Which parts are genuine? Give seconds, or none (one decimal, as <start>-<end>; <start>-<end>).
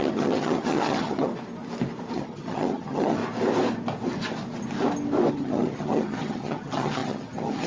1.3-2.1; 3.2-5.3